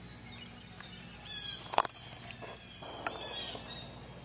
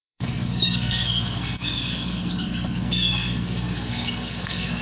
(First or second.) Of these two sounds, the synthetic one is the second